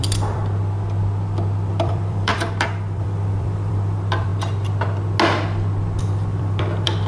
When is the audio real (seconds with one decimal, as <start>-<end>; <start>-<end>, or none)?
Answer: 0.4-1.7; 4.3-6.0